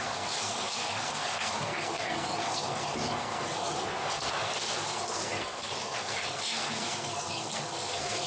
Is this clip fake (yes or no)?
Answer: yes